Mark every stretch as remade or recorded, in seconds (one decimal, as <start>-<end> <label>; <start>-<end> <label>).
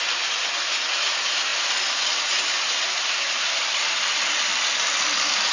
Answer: 0.0-5.5 recorded